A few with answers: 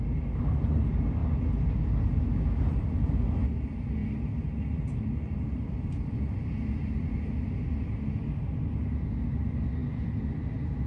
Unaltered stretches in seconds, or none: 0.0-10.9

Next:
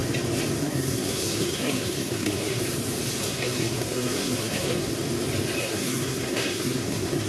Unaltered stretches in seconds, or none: 0.0-0.6; 2.6-3.2; 4.9-5.6

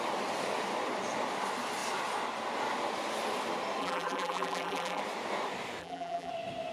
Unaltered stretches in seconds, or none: 0.0-3.8; 5.0-5.8; 6.3-6.7